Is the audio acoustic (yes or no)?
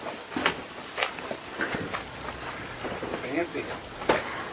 yes